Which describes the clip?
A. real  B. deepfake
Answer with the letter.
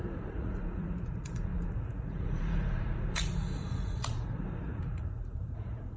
B